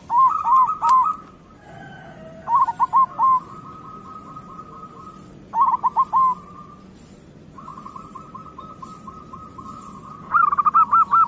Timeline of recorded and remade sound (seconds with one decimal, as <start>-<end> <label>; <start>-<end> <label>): 0.0-11.3 recorded